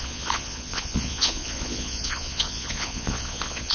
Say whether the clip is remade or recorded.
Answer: remade